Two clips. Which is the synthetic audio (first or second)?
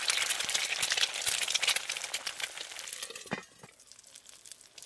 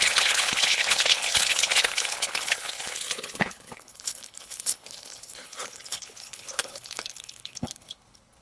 second